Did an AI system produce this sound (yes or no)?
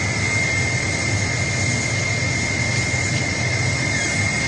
no